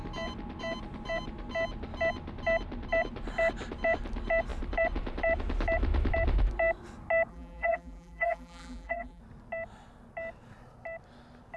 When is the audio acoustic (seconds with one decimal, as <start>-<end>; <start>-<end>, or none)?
0.0-7.3; 9.2-11.6